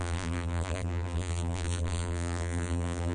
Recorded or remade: remade